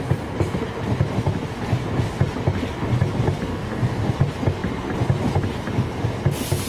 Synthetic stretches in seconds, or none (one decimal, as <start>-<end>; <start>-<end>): 3.5-4.1